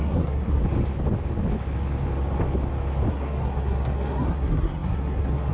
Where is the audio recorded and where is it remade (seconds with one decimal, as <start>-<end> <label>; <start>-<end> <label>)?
0.0-0.6 remade; 0.6-3.1 recorded; 3.1-5.5 remade